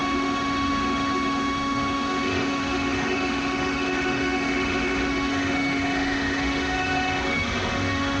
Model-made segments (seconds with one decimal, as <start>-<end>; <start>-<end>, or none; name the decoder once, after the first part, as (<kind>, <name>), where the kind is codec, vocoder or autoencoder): 0.0-8.2 (autoencoder, DAC-VAE)